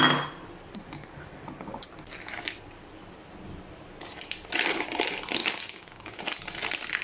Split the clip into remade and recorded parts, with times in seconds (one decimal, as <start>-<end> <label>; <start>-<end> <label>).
0.0-5.4 recorded; 5.4-6.2 remade; 6.2-7.0 recorded